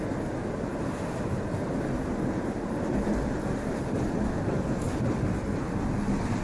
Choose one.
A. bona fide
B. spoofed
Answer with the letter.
A